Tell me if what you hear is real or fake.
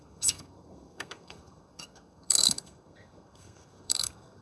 fake